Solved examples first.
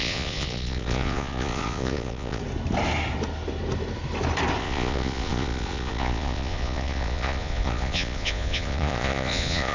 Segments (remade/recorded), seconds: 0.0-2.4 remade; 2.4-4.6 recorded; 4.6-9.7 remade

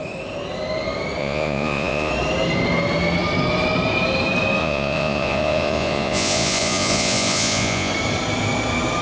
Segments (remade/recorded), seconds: 0.0-1.2 recorded; 1.2-2.1 remade; 2.1-4.6 recorded; 4.6-7.9 remade; 7.9-9.0 recorded

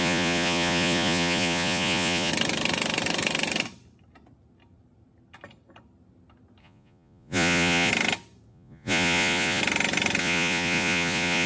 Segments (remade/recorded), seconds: 0.0-2.3 remade; 2.3-6.6 recorded; 6.6-7.9 remade; 7.9-8.5 recorded; 8.5-9.6 remade; 9.6-10.2 recorded; 10.2-11.5 remade

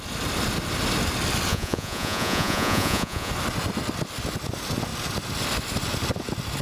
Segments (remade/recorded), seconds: 0.0-1.5 recorded; 1.5-3.3 remade; 3.3-6.6 recorded

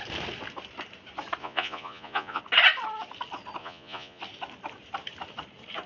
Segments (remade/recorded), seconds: 0.0-1.4 recorded; 1.4-2.4 remade; 2.4-3.6 recorded; 3.6-4.2 remade; 4.2-5.9 recorded

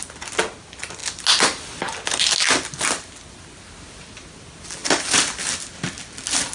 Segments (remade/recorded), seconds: 0.0-6.5 recorded